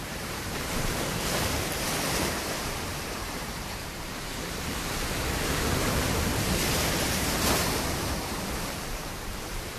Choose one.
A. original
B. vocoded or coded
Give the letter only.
B